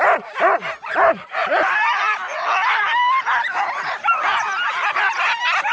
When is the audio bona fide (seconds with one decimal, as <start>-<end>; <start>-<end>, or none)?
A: 0.0-1.4; 2.0-2.6; 5.2-5.7

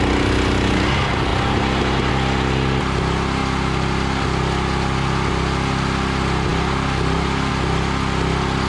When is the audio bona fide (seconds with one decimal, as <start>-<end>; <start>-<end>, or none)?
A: 0.0-1.3; 2.1-3.4; 4.2-8.7

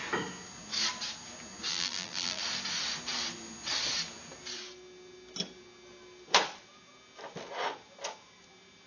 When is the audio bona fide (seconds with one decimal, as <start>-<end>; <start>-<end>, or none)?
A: 0.0-1.7; 2.4-8.9